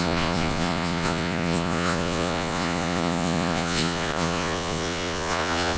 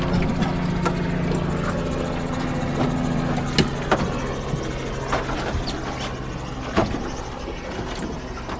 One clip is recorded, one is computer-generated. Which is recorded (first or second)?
second